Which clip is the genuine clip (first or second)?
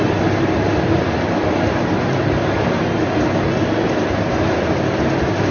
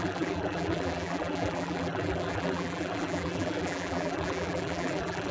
first